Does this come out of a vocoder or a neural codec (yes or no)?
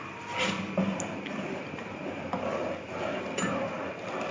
no